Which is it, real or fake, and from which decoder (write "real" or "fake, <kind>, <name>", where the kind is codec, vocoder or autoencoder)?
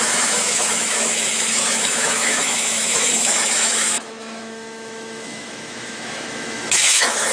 fake, autoencoder, DAC-VAE